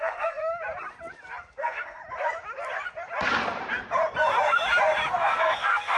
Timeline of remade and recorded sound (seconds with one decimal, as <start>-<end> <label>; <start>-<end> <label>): 0.0-0.4 remade; 0.4-1.4 recorded; 1.4-2.0 remade; 2.0-5.1 recorded; 5.1-6.0 remade